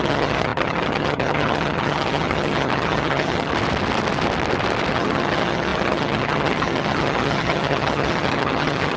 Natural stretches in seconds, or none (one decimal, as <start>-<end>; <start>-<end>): 3.5-4.9

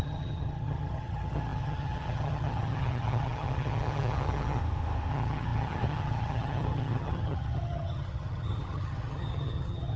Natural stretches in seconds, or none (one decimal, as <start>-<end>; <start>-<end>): 4.6-5.1

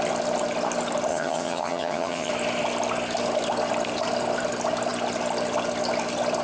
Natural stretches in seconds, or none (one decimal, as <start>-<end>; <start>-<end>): 0.0-1.1; 2.3-6.4

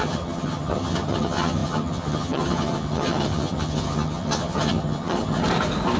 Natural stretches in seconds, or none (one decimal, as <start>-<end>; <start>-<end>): 5.4-6.0

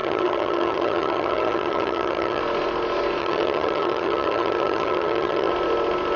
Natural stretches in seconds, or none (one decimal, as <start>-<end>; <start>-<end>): 2.4-3.2; 5.5-6.2

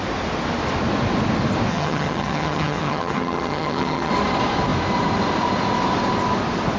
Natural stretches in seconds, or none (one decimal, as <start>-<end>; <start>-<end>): 0.0-1.7; 4.1-6.8